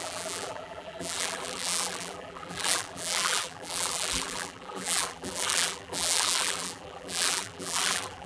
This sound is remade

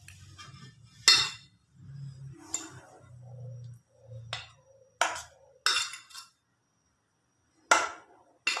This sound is recorded